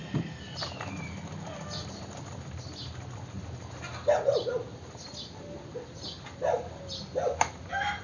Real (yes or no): yes